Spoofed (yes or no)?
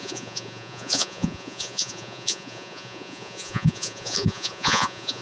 yes